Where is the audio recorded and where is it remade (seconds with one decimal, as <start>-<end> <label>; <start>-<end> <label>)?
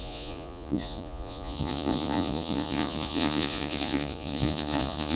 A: 0.0-5.2 remade